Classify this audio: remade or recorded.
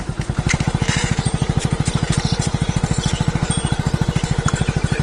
remade